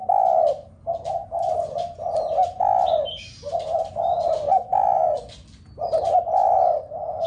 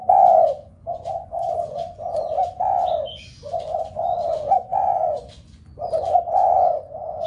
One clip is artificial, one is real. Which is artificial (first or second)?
second